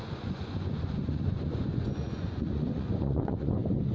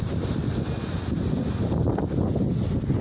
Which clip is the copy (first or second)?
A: first